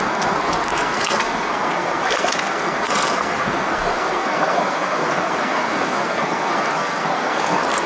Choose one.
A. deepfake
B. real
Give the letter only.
A